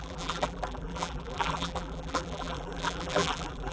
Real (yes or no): no